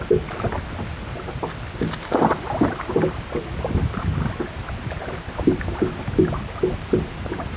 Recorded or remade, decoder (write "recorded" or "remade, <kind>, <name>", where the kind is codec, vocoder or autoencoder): recorded